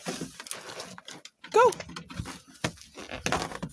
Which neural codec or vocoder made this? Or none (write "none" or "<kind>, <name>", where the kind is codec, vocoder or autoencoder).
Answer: none